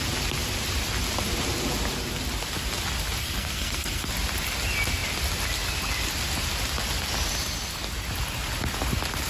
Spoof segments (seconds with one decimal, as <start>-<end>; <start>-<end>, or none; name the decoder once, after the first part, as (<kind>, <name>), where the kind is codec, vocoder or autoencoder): 3.2-4.1 (codec, SNAC)